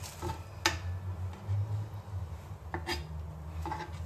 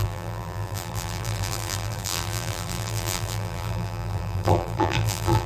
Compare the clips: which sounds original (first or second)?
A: first